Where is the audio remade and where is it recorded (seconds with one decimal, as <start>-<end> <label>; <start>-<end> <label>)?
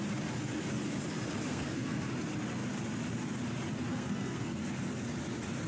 0.0-1.5 recorded; 1.5-2.1 remade; 2.1-3.9 recorded; 3.9-4.6 remade; 4.6-5.7 recorded